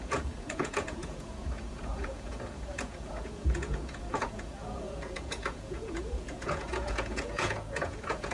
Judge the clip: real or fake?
fake